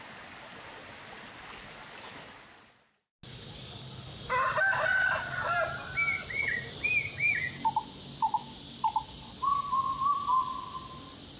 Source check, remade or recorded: recorded